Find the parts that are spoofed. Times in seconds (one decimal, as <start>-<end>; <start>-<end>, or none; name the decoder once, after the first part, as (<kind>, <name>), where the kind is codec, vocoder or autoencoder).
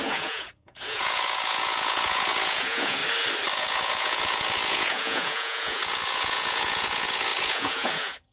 0.0-3.0 (vocoder, Vocos); 3.5-8.3